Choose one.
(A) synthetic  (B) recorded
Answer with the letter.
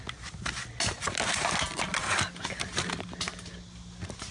B